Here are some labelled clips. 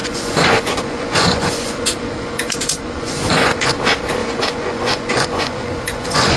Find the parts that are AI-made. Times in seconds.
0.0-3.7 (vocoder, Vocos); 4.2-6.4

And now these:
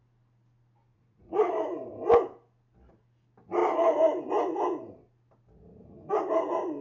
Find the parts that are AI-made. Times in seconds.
0.9-1.5 (vocoder, Vocos)

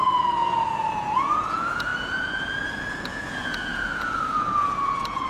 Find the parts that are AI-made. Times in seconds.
0.0-5.3 (vocoder, Vocos)

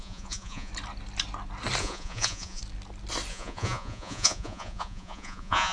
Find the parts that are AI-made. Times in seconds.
0.0-0.7 (vocoder, Vocos); 1.8-2.6; 3.3-5.7

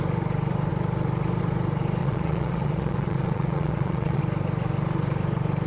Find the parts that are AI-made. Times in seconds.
2.0-4.2 (vocoder, Vocos)